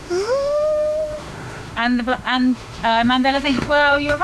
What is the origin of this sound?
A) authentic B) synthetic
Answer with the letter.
B